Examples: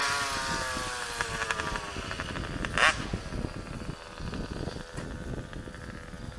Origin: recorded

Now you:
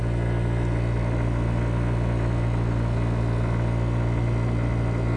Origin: recorded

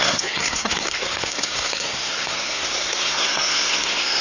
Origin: remade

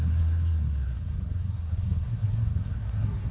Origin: remade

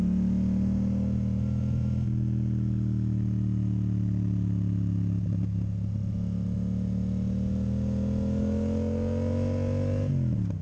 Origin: recorded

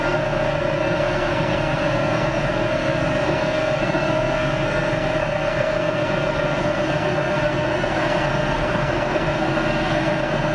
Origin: remade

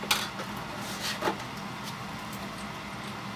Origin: recorded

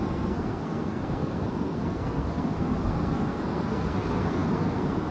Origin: remade